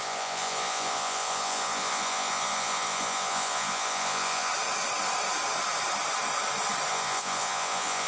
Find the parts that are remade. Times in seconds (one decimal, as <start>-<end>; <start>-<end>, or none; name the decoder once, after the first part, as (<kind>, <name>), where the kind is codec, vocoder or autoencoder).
0.0-4.5 (vocoder, Vocos); 6.9-8.1

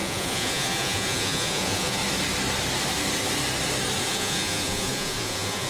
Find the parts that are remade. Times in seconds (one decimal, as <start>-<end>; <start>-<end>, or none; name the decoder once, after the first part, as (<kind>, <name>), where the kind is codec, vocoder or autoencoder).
0.0-2.0 (vocoder, Vocos); 4.0-5.7

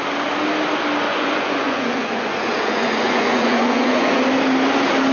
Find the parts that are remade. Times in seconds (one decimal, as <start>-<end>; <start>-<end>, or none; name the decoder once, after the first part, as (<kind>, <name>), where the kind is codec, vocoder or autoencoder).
1.1-4.2 (vocoder, Vocos)

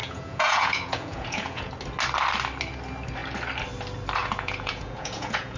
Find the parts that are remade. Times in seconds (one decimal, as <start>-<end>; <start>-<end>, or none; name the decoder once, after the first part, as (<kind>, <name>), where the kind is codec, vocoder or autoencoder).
0.0-1.7 (vocoder, Vocos); 4.2-5.6

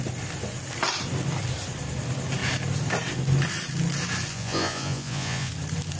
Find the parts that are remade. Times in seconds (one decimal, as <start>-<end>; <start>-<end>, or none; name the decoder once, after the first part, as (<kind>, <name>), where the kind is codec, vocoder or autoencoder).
4.3-5.5 (vocoder, Vocos)

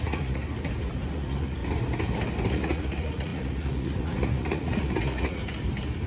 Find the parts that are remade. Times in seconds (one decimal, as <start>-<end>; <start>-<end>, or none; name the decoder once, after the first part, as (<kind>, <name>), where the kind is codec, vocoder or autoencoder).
0.0-0.4 (vocoder, Vocos); 1.1-1.6; 2.5-5.4